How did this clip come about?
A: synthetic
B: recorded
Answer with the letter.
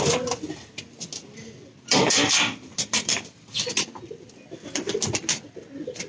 B